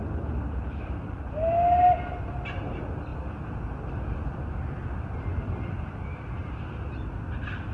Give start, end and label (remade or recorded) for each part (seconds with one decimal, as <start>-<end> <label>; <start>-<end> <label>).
0.0-7.7 recorded

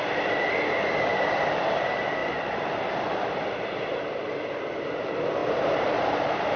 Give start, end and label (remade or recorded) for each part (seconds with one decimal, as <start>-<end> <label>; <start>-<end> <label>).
0.0-5.4 recorded; 5.4-6.6 remade

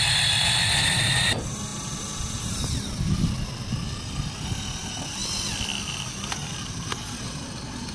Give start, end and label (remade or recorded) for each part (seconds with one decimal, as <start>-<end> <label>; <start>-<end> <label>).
0.0-7.9 recorded

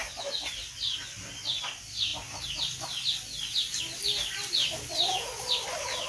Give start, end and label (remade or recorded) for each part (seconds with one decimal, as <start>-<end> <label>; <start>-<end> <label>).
0.0-6.1 recorded